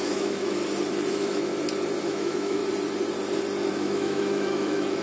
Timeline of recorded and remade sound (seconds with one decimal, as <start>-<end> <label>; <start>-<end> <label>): 0.0-0.6 remade; 0.6-1.1 recorded; 1.1-1.5 remade; 1.5-2.0 recorded; 2.0-2.6 remade; 2.6-3.7 recorded; 3.7-5.0 remade